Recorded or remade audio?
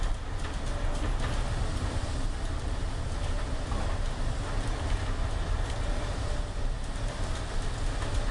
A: recorded